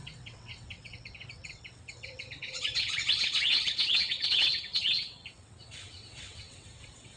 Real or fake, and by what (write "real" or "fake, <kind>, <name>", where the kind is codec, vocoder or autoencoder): fake, vocoder, WaveNeXt